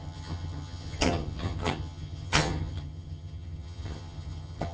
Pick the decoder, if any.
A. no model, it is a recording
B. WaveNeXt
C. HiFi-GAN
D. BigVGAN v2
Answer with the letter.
C